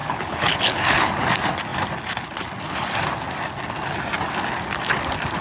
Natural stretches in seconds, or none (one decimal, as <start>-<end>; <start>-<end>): 1.1-5.4